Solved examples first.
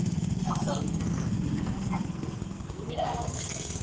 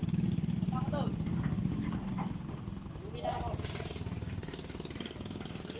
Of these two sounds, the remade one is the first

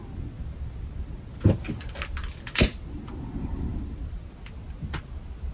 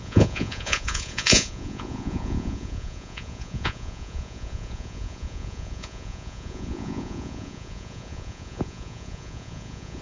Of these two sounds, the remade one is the second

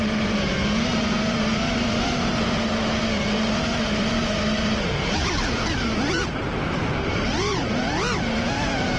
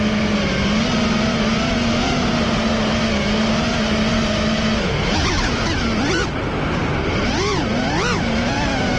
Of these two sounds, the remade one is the first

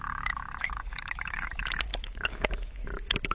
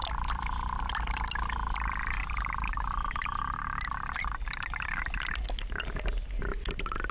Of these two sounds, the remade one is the first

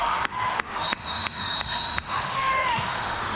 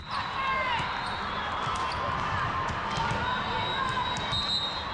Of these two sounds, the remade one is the first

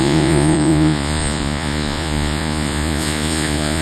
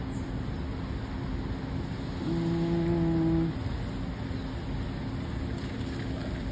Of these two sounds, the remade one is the first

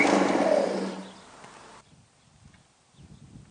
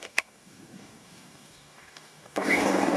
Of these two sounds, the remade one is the second